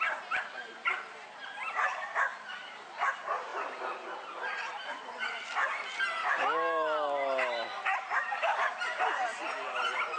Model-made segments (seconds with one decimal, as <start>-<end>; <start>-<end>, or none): 2.3-3.0; 3.5-4.0; 4.7-8.7; 9.3-10.2